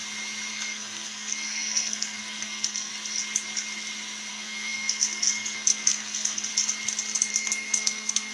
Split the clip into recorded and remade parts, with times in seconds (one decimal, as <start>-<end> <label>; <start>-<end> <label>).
0.0-0.5 recorded; 0.5-2.9 remade; 2.9-4.3 recorded; 4.3-6.5 remade; 6.5-7.3 recorded; 7.3-8.3 remade